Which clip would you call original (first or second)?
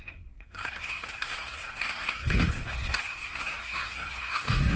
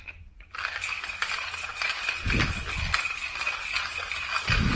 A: second